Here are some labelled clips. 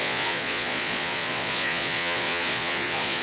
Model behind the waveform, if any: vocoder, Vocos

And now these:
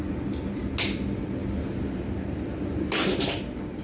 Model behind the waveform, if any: none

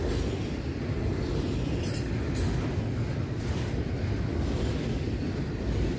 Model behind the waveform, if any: none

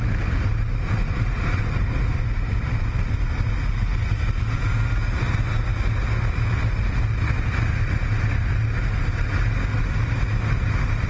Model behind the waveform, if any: none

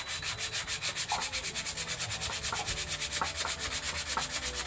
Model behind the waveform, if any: none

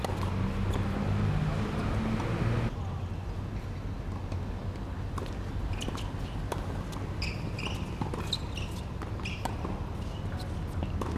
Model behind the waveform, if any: none